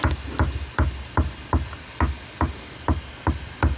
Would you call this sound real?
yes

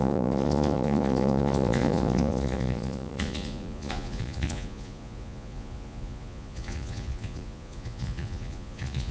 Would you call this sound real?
no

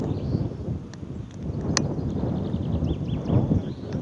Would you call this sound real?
yes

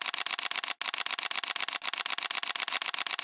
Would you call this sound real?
yes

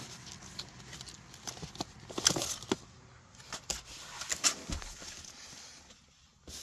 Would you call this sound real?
yes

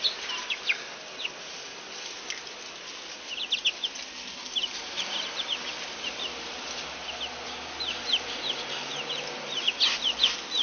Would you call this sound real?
yes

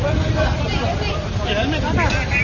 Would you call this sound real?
yes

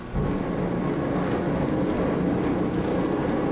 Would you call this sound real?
yes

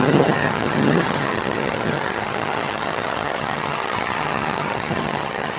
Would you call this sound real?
no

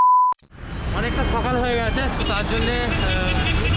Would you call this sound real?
yes